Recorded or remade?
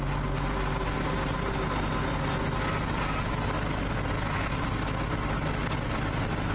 recorded